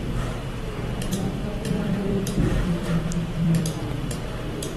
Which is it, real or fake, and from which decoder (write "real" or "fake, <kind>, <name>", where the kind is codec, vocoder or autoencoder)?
fake, vocoder, BigVGAN v2